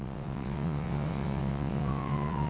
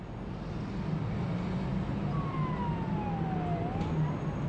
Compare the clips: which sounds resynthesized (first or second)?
first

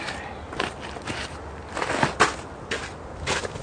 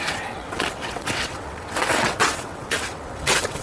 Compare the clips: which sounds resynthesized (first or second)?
second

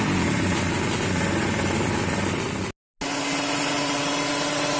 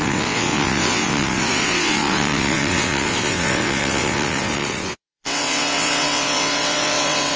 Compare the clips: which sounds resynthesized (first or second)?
second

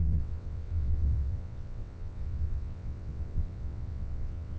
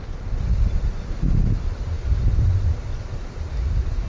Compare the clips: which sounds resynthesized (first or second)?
first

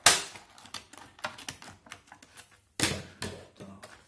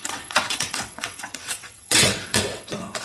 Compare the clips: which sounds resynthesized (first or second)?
second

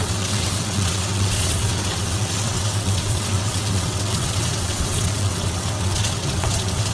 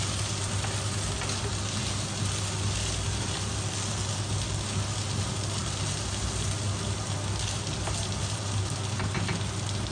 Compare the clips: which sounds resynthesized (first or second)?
first